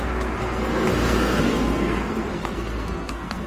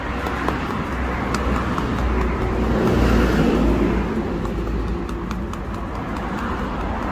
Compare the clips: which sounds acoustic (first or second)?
second